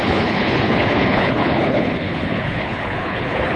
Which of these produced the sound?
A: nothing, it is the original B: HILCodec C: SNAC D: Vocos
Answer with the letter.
B